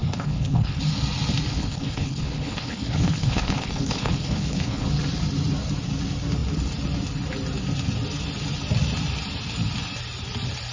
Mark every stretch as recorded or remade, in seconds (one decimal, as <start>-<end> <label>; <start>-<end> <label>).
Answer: 0.0-0.8 remade; 0.8-1.5 recorded; 1.5-4.9 remade; 4.9-10.7 recorded